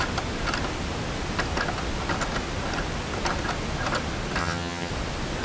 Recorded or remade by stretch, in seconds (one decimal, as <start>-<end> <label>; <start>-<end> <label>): 0.0-4.4 recorded; 4.4-4.9 remade; 4.9-5.4 recorded